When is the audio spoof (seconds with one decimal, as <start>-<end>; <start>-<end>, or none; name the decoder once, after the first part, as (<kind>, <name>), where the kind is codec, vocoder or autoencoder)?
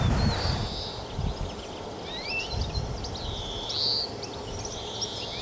none